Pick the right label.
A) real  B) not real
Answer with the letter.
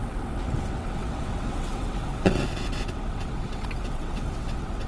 B